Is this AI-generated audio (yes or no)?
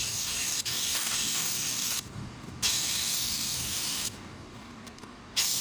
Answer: yes